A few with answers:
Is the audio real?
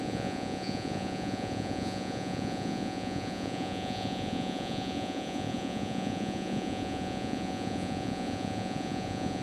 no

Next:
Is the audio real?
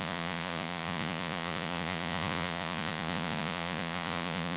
no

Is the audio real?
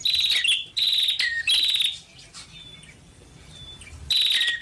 yes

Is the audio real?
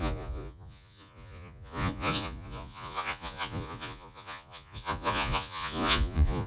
no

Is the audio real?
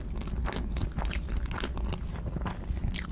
yes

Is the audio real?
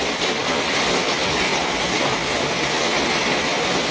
yes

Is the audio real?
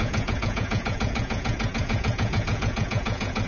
no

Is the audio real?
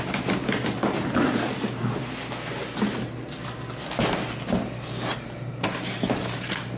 yes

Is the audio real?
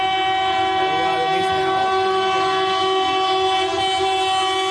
yes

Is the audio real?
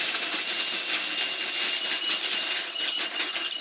yes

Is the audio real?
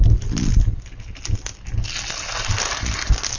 yes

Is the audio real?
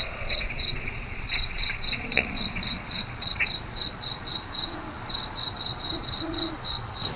no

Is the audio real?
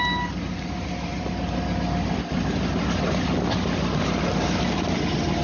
yes